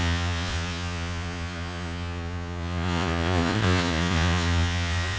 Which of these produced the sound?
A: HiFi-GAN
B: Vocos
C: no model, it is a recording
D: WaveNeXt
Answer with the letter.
B